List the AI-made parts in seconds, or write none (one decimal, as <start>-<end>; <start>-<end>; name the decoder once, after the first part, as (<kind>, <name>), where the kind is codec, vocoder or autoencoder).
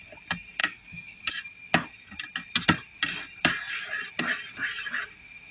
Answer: 0.6-1.3 (codec, DAC)